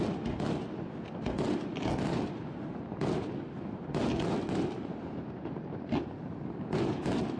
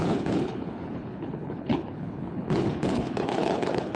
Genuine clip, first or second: first